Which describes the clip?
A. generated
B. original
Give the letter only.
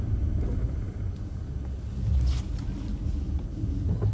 B